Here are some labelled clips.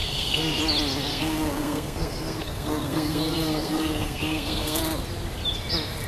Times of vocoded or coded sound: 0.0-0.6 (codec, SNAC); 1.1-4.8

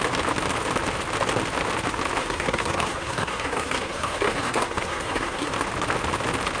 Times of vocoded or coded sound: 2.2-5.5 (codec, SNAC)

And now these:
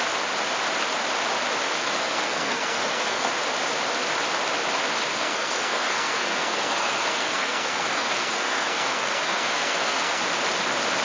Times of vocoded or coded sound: 1.8-3.3 (codec, SNAC); 5.1-10.2

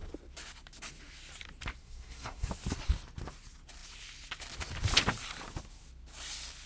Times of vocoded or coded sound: 1.8-2.5 (codec, SNAC)

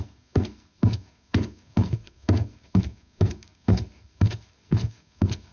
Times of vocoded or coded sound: 0.0-5.5 (codec, SNAC)